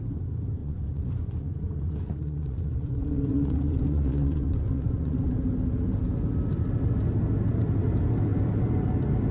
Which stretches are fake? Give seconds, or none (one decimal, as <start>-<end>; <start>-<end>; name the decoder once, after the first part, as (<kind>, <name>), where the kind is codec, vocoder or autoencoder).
0.6-5.3 (vocoder, Vocos)